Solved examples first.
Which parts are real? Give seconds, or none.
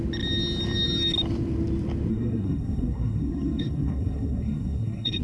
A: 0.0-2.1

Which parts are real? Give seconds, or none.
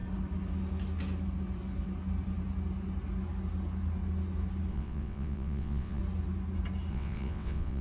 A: 0.0-4.7; 6.0-6.9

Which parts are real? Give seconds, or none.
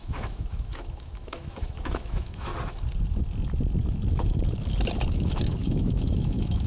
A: 2.5-5.1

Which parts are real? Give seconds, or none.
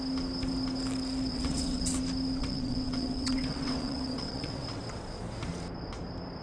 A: 0.0-1.3; 2.0-2.4; 4.8-6.4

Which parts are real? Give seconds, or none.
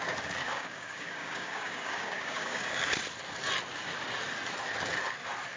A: 0.0-0.4; 2.8-5.6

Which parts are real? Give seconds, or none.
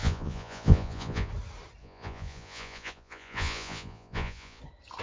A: 1.3-1.8; 4.6-5.0